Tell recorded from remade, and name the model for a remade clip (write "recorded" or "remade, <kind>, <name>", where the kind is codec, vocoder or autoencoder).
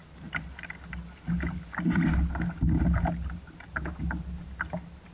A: recorded